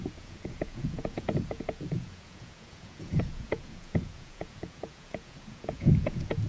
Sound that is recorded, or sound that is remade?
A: remade